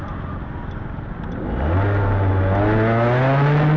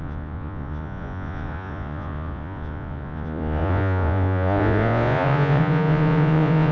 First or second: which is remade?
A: second